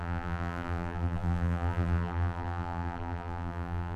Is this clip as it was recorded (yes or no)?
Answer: no